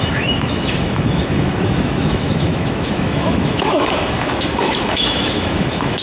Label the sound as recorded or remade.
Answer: remade